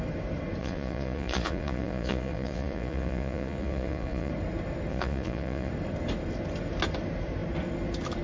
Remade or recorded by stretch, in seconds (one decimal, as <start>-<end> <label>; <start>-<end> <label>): 0.0-0.6 recorded; 0.6-4.3 remade; 4.3-4.9 recorded; 4.9-5.7 remade; 5.7-8.2 recorded